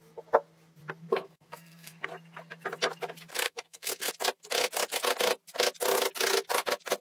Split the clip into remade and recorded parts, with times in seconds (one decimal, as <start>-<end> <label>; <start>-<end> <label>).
0.0-1.0 recorded; 1.0-2.1 remade; 2.1-3.3 recorded; 3.3-4.1 remade; 4.1-7.0 recorded